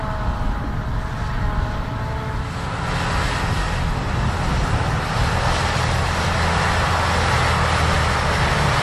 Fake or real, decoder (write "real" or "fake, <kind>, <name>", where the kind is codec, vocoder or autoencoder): real